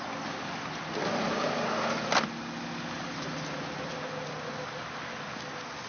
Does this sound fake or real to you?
real